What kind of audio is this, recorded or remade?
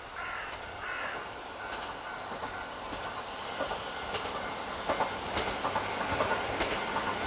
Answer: recorded